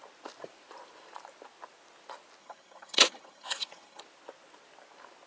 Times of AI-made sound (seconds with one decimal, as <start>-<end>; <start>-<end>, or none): 2.4-4.0